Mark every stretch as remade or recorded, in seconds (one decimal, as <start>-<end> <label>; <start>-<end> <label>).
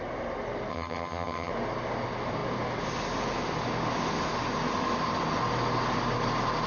0.0-0.7 recorded; 0.7-1.5 remade; 1.5-6.7 recorded